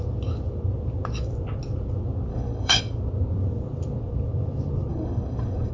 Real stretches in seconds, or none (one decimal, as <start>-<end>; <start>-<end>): 0.0-2.3; 2.8-4.9